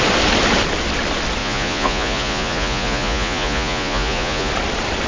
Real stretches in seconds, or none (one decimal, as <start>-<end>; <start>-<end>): 0.0-1.4; 4.5-5.1